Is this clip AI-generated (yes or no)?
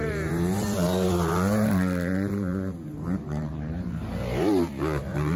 yes